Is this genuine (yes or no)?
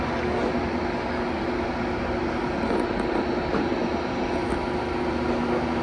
yes